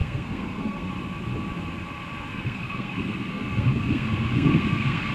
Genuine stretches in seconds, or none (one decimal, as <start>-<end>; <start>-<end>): 0.9-2.3